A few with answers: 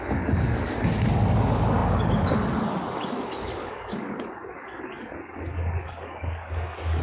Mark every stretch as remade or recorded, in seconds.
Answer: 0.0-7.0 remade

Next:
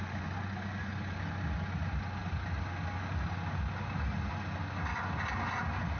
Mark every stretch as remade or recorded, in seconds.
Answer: 0.0-6.0 recorded

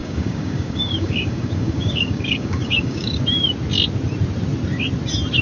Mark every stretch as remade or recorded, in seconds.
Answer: 0.0-3.2 remade; 3.2-5.4 recorded

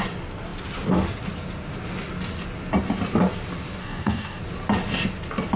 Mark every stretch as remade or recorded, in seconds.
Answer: 0.0-3.8 recorded; 3.8-4.4 remade; 4.4-5.6 recorded